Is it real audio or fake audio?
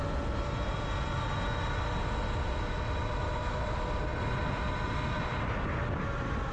real